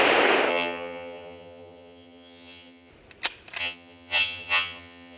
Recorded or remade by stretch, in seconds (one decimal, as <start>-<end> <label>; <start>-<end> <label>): 0.0-0.5 recorded; 0.5-2.9 remade; 2.9-3.6 recorded; 3.6-5.2 remade